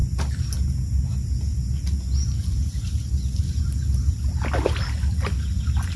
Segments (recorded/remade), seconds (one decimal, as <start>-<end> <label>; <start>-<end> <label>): 0.0-6.0 recorded